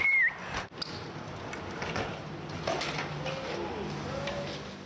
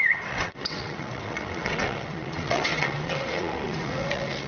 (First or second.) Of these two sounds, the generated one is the second